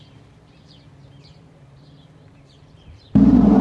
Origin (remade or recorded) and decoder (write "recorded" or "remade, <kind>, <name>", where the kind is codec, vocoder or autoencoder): remade, vocoder, BigVGAN v2